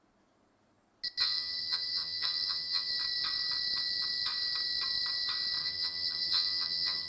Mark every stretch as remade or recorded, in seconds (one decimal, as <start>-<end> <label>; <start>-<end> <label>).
0.0-1.2 recorded; 1.2-2.9 remade; 2.9-5.6 recorded; 5.6-7.1 remade

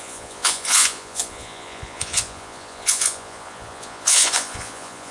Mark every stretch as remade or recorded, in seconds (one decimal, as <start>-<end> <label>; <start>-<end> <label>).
0.0-5.1 remade

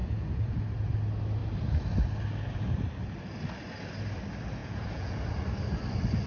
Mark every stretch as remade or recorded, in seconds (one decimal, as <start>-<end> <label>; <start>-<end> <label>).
0.0-0.6 remade; 0.6-4.6 recorded; 4.6-5.2 remade; 5.2-6.3 recorded

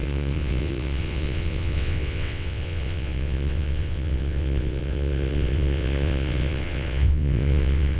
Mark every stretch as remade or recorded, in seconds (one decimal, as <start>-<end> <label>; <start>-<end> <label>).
0.0-8.0 remade

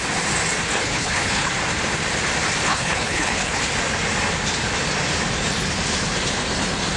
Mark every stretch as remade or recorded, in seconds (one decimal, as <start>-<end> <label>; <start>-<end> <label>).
0.0-0.6 recorded; 0.6-1.5 remade; 1.5-2.7 recorded; 2.7-3.6 remade; 3.6-7.0 recorded

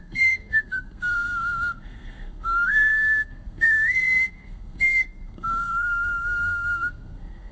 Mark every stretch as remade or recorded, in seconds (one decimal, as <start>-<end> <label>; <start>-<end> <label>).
0.0-7.5 remade

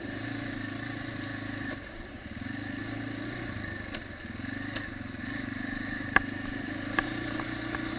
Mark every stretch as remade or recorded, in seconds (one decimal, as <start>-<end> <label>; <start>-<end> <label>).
0.0-1.3 remade; 1.3-5.2 recorded; 5.2-8.0 remade